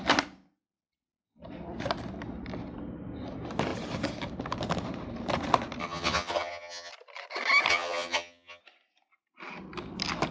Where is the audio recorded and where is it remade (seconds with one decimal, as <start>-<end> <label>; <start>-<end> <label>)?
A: 0.0-5.8 recorded; 5.8-6.9 remade; 6.9-7.7 recorded; 7.7-8.6 remade; 8.6-10.3 recorded